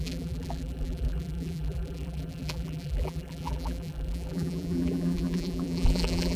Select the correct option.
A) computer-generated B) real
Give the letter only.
A